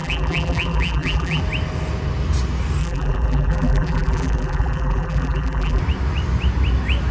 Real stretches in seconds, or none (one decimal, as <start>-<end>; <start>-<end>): 1.4-2.8; 5.8-7.1